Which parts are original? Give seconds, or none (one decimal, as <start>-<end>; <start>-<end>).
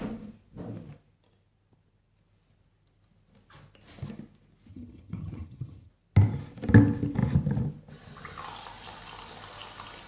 0.0-4.7; 5.9-10.1